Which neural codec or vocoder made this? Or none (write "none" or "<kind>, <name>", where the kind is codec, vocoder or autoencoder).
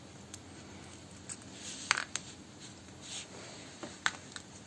none